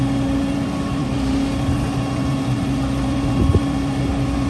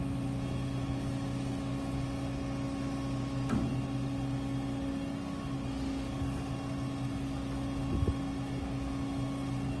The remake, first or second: first